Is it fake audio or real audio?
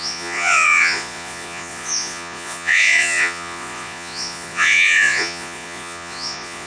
fake